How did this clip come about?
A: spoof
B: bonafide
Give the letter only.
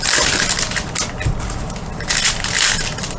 B